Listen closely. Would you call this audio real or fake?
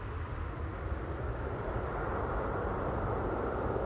real